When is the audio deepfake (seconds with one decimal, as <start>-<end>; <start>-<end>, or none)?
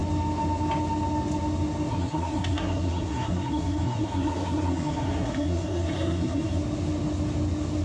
1.9-6.6